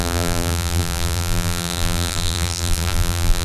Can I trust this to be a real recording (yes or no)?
no